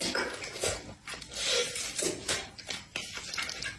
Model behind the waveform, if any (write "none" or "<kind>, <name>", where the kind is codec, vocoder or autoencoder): none